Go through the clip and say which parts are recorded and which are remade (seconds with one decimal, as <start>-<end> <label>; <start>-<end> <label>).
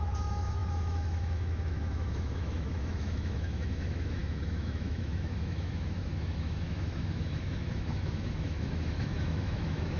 0.0-10.0 remade